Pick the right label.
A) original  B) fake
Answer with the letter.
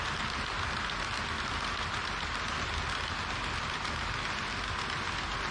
A